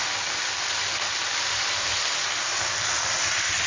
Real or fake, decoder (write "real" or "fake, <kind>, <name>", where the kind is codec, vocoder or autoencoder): real